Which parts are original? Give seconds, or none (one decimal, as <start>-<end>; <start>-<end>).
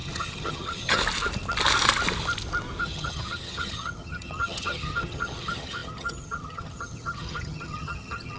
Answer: 1.0-2.8